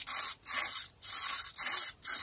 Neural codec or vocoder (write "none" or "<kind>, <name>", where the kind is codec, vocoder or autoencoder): none